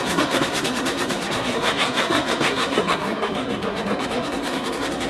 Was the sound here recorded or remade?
remade